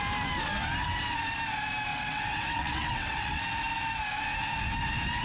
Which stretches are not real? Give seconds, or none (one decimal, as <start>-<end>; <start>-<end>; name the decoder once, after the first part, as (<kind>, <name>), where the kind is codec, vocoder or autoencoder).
1.9-3.4 (vocoder, WaveNeXt)